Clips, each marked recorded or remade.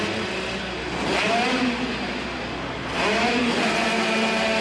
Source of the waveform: recorded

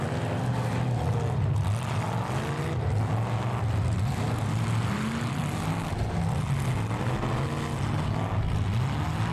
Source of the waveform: recorded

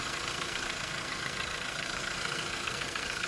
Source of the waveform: remade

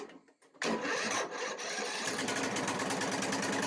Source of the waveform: recorded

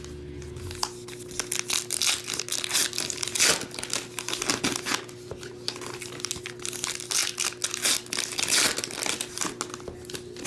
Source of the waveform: recorded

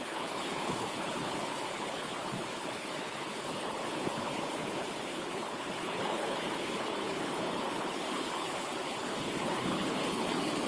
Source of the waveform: remade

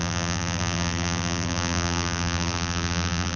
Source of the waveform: remade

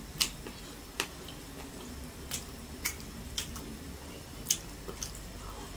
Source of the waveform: recorded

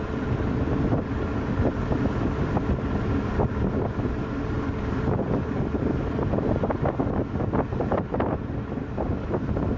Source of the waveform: recorded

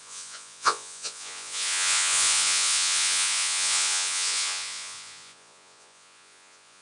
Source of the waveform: remade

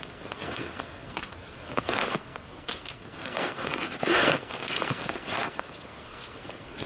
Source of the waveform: remade